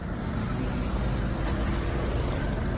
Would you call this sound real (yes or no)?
yes